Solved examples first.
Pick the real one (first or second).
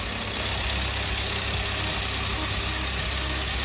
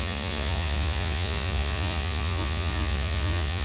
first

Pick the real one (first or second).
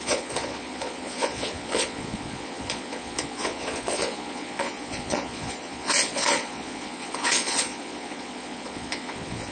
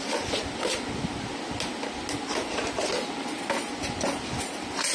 second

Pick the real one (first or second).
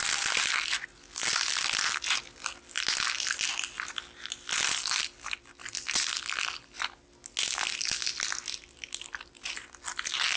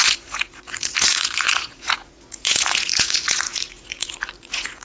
first